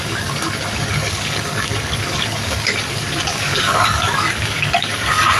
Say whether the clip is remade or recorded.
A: remade